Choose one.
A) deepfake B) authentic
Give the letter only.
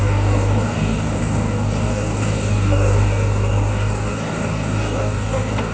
A